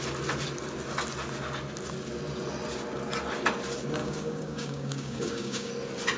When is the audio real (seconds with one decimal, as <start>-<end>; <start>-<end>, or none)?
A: 0.0-4.0; 5.7-6.2